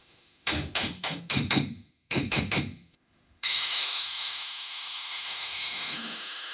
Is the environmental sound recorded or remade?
remade